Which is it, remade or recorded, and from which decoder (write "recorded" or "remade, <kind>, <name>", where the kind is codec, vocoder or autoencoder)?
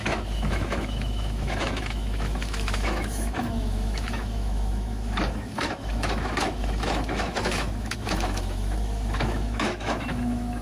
remade, autoencoder, DAC-VAE